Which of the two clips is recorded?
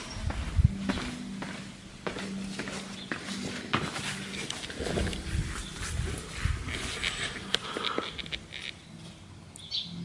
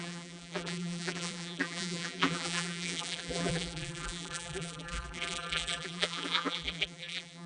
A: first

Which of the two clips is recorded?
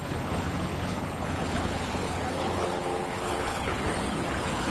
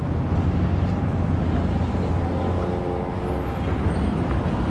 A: second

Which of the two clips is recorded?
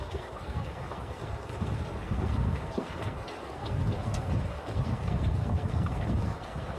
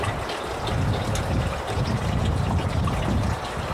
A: second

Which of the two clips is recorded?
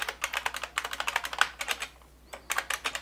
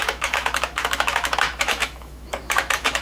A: first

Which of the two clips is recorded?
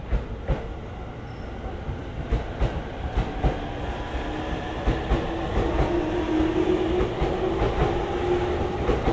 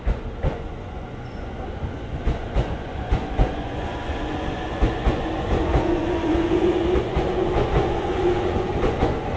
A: first